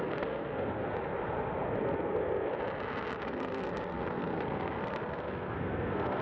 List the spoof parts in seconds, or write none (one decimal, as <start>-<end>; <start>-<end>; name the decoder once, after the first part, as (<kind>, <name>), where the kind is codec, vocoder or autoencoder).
0.0-0.8 (codec, SNAC); 1.8-2.5; 3.2-6.2